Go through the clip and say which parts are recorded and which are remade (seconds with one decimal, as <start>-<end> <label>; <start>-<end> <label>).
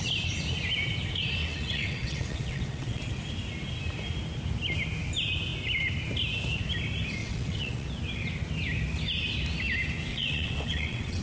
0.0-1.4 recorded; 1.4-3.0 remade; 3.0-7.2 recorded; 7.2-7.9 remade; 7.9-10.1 recorded; 10.1-11.2 remade